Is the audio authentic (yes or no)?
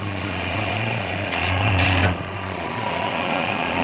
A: no